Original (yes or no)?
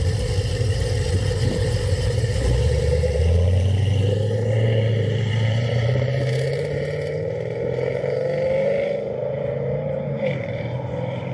no